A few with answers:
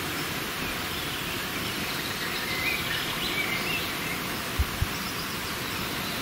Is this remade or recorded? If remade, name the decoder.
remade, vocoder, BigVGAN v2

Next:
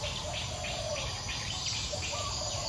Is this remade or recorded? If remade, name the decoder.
remade, vocoder, BigVGAN v2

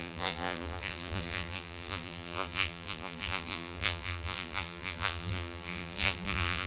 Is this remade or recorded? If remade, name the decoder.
remade, vocoder, BigVGAN v2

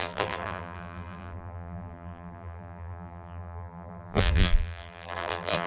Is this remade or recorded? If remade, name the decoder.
remade, vocoder, BigVGAN v2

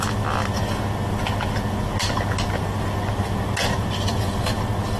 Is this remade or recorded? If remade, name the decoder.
recorded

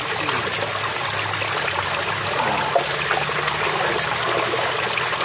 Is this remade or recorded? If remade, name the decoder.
recorded